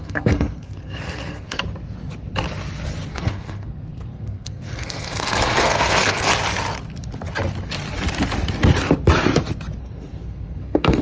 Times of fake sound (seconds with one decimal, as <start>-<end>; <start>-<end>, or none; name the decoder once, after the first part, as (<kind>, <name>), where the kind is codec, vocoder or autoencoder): 0.0-1.6 (codec, SNAC); 3.1-6.3; 9.8-11.0